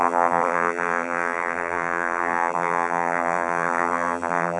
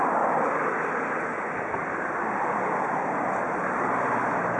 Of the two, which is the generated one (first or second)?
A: first